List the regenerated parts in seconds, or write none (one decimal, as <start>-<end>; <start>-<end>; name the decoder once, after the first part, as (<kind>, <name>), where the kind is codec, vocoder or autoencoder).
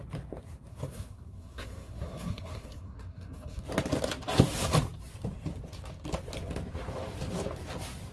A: 0.7-3.6 (codec, SNAC)